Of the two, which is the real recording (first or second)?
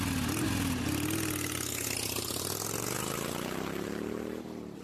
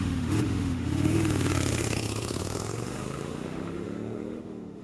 first